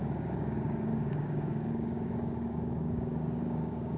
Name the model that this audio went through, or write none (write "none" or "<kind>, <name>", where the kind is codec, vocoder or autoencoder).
codec, DAC